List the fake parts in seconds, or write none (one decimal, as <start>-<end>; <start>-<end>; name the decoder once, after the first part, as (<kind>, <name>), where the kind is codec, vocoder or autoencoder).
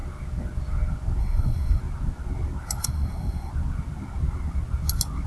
1.2-1.8 (codec, SNAC); 2.8-3.5